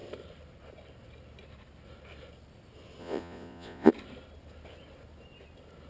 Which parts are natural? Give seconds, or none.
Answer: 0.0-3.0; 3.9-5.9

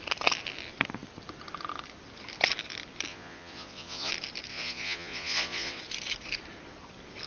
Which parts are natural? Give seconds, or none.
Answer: 0.0-3.1; 4.1-4.5; 5.8-7.3